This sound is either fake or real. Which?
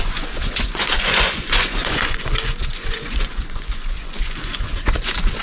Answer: fake